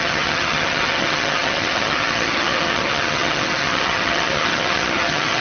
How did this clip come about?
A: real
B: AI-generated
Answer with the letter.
B